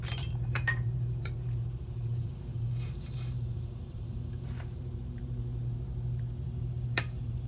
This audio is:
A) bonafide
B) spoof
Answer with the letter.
B